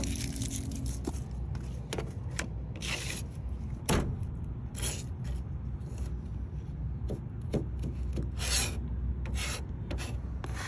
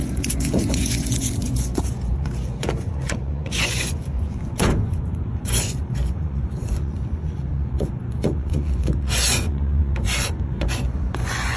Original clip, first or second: first